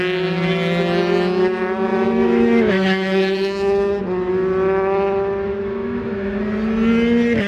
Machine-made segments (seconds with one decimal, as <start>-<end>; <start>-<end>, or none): 1.9-4.0; 5.5-6.4